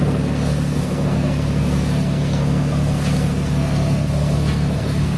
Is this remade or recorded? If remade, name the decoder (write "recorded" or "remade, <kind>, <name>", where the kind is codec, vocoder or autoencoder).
remade, codec, SNAC